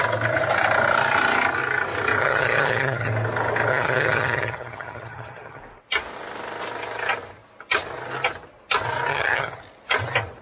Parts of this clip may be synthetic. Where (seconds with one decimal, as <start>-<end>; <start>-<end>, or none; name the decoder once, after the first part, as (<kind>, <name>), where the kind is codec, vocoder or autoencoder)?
2.2-3.1 (vocoder, HiFi-GAN); 3.7-5.6; 9.1-9.6

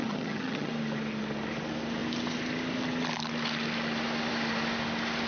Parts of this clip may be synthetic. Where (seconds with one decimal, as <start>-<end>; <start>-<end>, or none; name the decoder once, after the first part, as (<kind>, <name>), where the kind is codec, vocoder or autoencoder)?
0.0-0.7 (vocoder, HiFi-GAN)

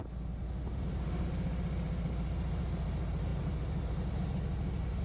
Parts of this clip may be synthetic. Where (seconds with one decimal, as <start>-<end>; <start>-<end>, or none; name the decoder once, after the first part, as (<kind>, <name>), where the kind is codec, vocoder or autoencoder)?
none

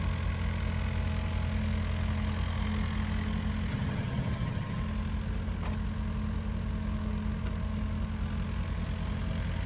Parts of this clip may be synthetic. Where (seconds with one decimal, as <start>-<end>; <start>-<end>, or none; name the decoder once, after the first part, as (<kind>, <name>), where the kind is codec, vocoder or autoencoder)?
3.7-4.8 (vocoder, HiFi-GAN)